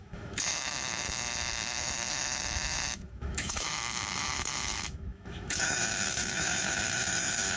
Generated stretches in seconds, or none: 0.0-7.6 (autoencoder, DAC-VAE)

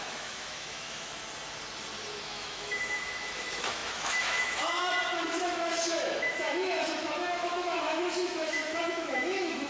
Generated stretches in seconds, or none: 0.0-1.2 (autoencoder, DAC-VAE); 2.2-9.7

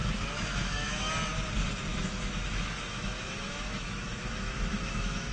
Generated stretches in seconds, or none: 0.0-1.1 (autoencoder, DAC-VAE); 1.9-5.3

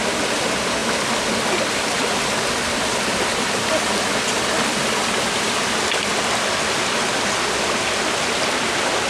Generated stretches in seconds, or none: none

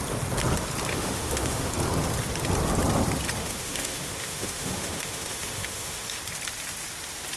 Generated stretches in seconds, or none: 0.9-1.7 (autoencoder, DAC-VAE); 3.4-6.2

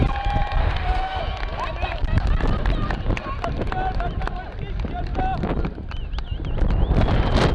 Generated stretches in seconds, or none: 0.6-1.2 (autoencoder, DAC-VAE)

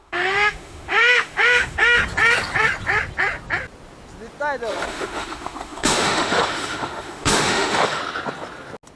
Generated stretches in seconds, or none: 0.0-2.0 (autoencoder, DAC-VAE); 4.7-8.0